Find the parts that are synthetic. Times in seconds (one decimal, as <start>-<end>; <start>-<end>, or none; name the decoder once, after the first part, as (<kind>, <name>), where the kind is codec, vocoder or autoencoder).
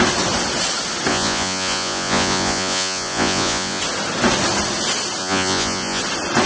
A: 1.1-3.8 (vocoder, Vocos); 5.2-6.0